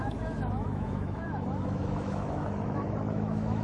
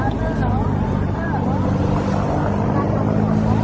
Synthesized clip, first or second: first